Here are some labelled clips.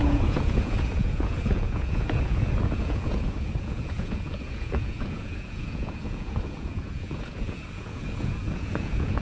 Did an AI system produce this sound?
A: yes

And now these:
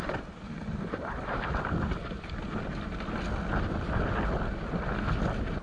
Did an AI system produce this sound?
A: no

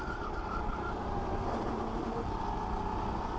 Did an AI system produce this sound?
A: no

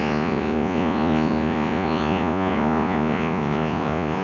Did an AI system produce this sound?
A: yes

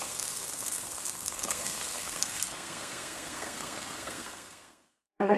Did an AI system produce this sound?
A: yes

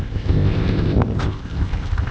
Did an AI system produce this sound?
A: yes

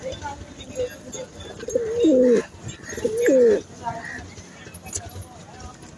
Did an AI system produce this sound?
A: no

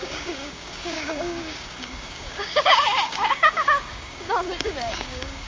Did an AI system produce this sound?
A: yes